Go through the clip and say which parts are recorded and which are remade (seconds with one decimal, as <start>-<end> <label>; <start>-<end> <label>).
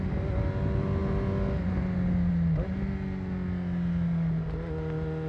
0.0-5.3 recorded